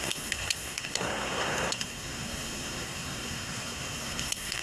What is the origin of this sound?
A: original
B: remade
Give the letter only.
B